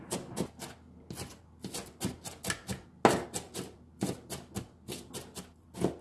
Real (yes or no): yes